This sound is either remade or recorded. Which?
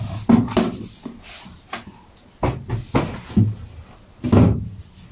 recorded